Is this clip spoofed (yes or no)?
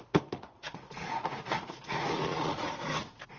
yes